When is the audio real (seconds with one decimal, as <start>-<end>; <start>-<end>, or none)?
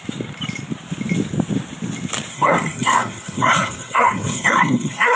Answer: 0.0-2.3